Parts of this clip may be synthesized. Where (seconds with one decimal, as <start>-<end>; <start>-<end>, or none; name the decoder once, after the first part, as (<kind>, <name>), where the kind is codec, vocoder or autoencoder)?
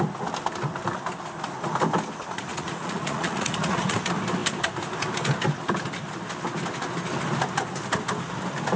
2.5-4.0 (vocoder, Vocos)